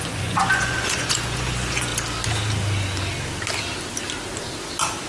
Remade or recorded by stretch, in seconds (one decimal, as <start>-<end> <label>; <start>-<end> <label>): 0.0-1.9 remade; 1.9-5.1 recorded

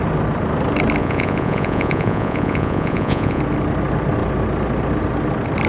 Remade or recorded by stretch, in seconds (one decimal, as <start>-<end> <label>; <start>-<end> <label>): 0.0-1.0 recorded; 1.0-3.4 remade; 3.4-5.7 recorded